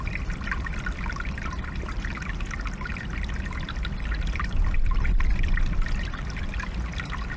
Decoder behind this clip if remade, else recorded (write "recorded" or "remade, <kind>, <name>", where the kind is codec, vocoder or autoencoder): recorded